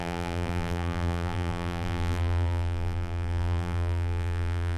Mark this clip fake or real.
fake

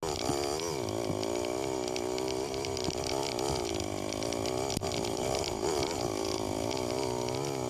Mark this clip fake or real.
real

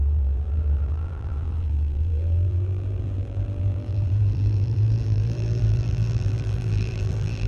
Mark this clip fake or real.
fake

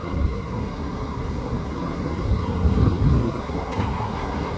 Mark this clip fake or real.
fake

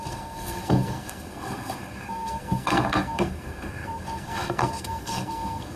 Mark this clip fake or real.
fake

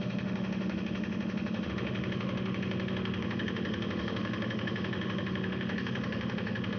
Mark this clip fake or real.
fake